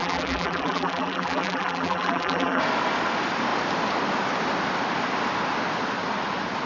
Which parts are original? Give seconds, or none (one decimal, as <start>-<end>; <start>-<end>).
2.6-6.7